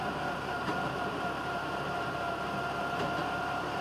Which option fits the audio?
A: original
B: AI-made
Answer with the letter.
A